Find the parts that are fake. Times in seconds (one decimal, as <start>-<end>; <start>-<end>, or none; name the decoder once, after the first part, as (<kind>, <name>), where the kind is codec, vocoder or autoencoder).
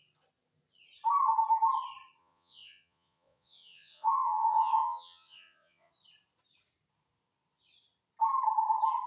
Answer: 2.2-5.9 (vocoder, Vocos)